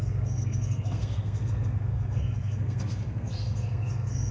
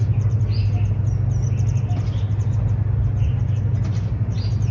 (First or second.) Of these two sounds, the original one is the second